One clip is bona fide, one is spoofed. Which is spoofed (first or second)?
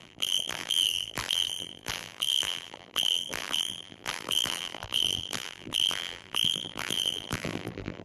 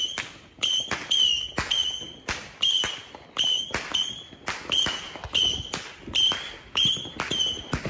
first